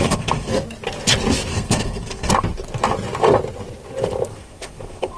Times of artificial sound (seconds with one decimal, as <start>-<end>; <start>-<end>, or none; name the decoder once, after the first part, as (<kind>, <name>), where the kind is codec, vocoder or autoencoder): 0.0-0.5 (codec, SNAC); 1.5-2.3; 4.3-5.2